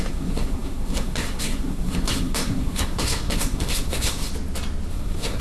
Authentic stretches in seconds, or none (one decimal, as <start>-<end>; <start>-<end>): 4.3-4.9